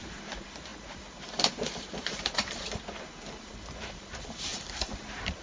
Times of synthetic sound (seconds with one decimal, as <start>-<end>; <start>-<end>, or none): 0.0-5.4

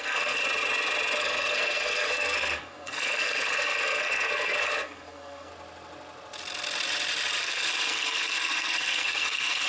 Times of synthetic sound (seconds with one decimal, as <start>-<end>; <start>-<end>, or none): 0.0-0.4; 1.2-5.5; 7.4-9.7

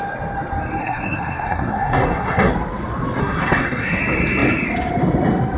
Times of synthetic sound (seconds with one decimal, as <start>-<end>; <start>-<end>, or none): 0.8-2.5; 3.2-4.0

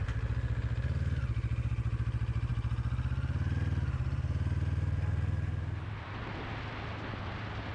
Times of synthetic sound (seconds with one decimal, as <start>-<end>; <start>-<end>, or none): none